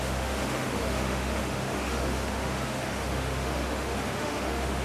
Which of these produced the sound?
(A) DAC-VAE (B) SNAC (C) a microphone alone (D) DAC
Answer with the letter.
A